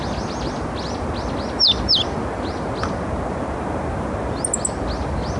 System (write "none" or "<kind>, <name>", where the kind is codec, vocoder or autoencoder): none